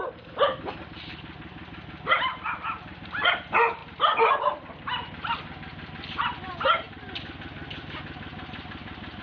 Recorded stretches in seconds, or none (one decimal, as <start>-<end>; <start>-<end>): 0.0-9.2

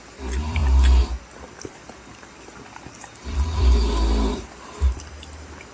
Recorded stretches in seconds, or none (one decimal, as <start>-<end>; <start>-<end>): 0.6-1.6

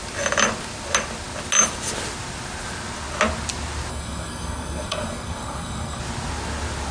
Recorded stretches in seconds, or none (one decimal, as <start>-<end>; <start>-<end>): 0.0-3.9; 6.0-6.9

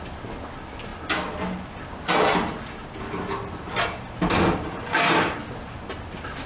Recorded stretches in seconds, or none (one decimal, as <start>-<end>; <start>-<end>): 0.0-6.5

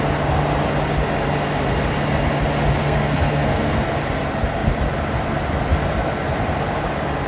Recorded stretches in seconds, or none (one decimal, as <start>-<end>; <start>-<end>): 0.0-2.8; 3.9-7.3